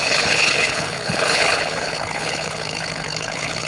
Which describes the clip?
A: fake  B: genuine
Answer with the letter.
A